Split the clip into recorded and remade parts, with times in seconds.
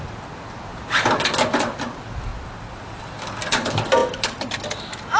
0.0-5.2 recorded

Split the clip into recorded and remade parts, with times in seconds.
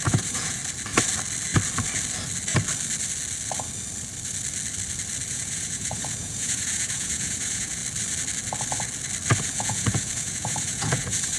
0.0-0.6 remade; 0.6-5.3 recorded; 5.3-7.8 remade; 7.8-9.4 recorded; 9.4-11.4 remade